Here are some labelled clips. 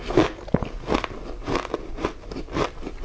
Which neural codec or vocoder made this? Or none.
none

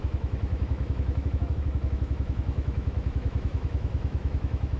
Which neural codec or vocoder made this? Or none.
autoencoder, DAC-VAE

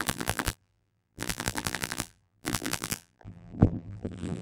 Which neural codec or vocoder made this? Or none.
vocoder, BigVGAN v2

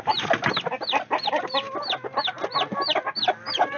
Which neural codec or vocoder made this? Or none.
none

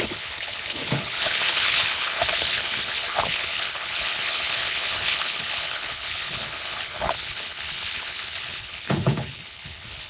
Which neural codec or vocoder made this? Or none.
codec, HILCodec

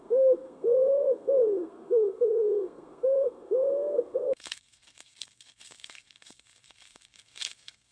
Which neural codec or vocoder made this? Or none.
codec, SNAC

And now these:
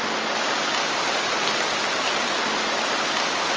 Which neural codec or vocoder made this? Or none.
none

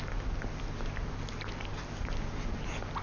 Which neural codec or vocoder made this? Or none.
none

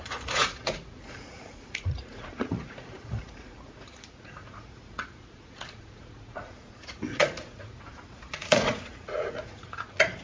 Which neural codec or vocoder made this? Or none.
vocoder, Vocos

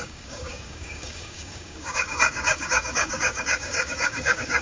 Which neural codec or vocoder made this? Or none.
codec, DAC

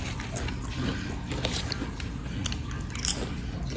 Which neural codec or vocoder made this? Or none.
none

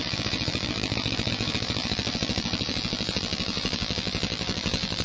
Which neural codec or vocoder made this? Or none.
vocoder, BigVGAN v2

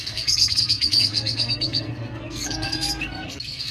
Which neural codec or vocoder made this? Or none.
codec, SNAC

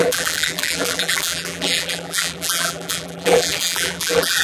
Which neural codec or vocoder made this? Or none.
vocoder, BigVGAN v2